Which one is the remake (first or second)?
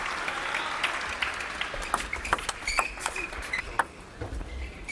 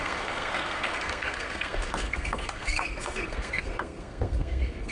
second